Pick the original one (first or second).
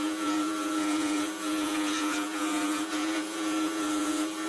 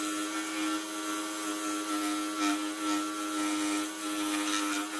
second